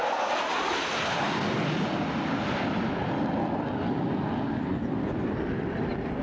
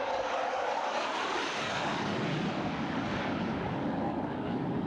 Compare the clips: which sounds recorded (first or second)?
first